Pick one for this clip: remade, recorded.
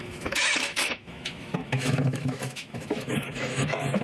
remade